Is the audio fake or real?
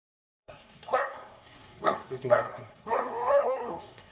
fake